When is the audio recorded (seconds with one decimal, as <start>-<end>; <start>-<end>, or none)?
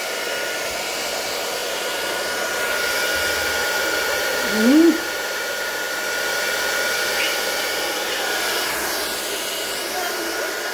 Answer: 0.0-1.6; 2.9-4.3; 5.5-10.7